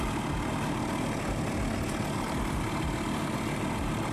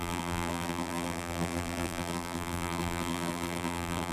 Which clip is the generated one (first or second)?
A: second